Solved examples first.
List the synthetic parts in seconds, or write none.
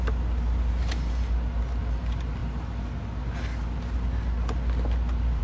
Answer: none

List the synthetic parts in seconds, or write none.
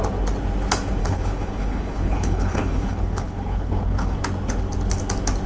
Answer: 1.0-4.2 (codec, HILCodec)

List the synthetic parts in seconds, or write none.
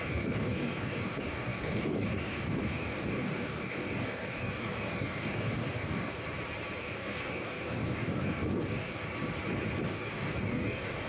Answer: 0.0-6.1 (codec, DAC); 6.8-9.1; 9.9-11.1